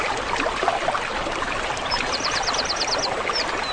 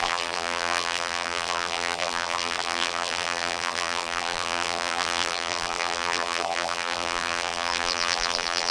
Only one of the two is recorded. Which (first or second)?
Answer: first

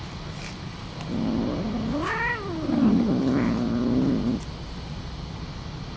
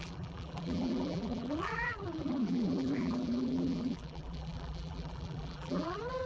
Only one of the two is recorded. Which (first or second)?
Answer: first